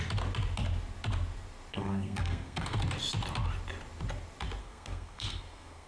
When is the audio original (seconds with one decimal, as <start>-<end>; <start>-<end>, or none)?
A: 0.0-1.7; 2.8-4.6